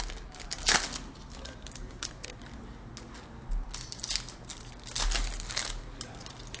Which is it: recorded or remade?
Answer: recorded